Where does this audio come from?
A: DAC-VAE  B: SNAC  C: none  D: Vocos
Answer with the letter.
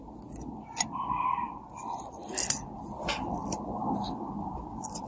C